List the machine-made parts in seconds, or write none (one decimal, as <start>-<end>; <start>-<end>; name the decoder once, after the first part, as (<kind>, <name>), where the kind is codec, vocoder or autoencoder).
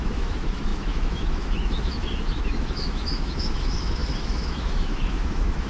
0.0-5.7 (autoencoder, DAC-VAE)